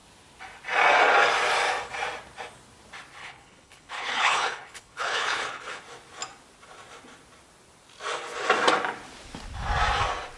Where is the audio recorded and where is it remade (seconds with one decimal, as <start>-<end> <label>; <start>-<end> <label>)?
0.0-3.2 recorded; 3.2-5.8 remade; 5.8-10.4 recorded